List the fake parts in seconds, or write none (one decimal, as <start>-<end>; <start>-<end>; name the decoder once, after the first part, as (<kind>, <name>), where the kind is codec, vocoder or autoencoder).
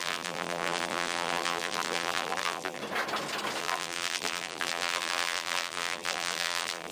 0.0-2.8 (vocoder, BigVGAN v2); 3.6-6.9